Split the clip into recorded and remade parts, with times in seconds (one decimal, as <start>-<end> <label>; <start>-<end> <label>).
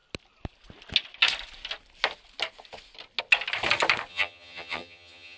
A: 0.0-4.1 recorded; 4.1-5.4 remade